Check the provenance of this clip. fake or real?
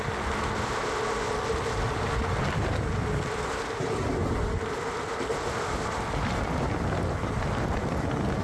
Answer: real